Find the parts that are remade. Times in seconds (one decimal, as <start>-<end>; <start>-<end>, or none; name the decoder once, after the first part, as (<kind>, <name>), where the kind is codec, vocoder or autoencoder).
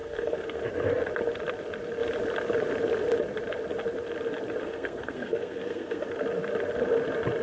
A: 0.0-0.6 (codec, SNAC); 4.6-6.1